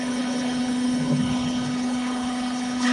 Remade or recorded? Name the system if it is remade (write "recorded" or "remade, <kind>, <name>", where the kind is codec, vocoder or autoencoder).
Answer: remade, codec, HILCodec